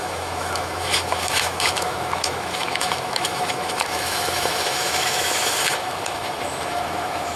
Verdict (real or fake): fake